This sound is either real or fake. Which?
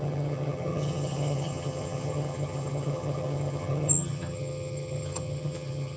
fake